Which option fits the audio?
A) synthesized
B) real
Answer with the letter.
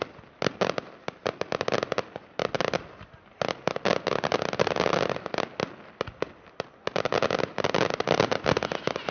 B